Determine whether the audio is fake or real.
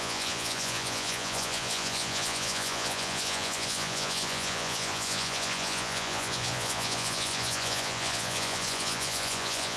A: fake